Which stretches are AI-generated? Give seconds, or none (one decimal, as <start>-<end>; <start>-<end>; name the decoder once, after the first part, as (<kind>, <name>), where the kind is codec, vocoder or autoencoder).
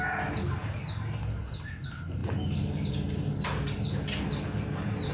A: none